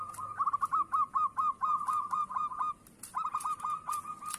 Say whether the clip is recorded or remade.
recorded